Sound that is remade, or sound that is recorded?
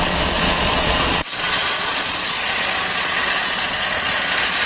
remade